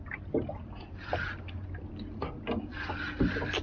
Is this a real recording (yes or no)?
yes